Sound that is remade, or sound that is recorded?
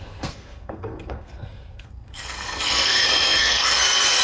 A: remade